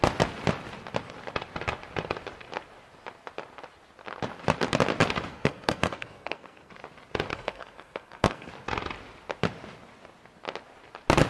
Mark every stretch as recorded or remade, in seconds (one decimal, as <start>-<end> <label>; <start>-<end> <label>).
0.0-5.3 recorded; 5.3-6.7 remade; 6.7-7.3 recorded; 7.3-8.5 remade; 8.5-11.3 recorded